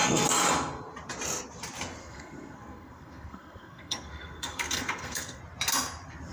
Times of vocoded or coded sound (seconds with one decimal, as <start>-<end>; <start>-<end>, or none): 2.0-5.4